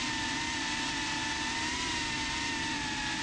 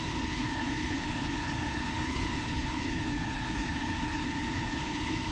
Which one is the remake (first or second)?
second